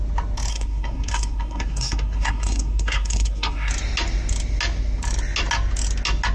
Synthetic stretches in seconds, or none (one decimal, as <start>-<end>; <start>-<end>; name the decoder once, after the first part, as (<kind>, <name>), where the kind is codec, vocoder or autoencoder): 0.5-3.7 (codec, SNAC)